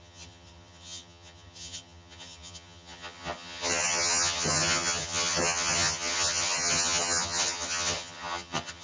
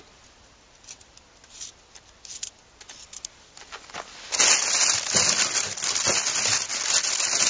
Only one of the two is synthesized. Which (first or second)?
first